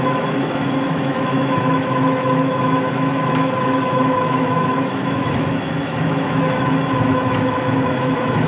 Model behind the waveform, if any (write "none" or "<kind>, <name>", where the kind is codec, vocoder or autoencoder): autoencoder, DAC-VAE